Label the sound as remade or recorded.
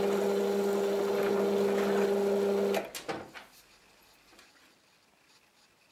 recorded